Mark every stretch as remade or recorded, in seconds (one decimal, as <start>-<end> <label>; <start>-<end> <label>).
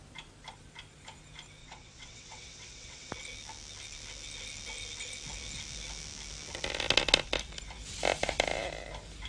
0.0-1.6 recorded; 1.6-3.1 remade; 3.1-9.3 recorded